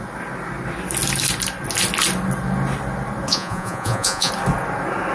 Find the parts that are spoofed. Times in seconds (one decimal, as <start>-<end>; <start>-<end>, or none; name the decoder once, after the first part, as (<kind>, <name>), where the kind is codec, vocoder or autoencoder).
3.3-4.3 (vocoder, Vocos)